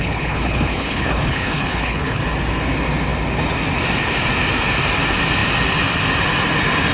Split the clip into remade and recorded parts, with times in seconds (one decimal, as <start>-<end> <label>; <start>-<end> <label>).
0.0-2.2 remade; 2.2-6.9 recorded